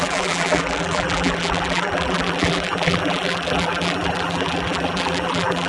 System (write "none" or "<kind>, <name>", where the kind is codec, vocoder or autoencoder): vocoder, BigVGAN v2